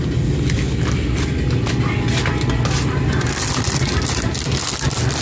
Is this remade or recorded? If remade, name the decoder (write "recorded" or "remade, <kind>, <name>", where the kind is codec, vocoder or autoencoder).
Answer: recorded